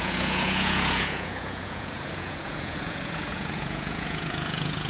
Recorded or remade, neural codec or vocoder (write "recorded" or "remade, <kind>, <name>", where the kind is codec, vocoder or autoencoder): remade, vocoder, Vocos